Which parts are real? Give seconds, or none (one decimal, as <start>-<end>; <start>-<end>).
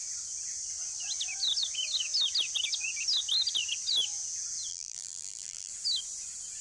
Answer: 0.0-4.7; 5.7-6.6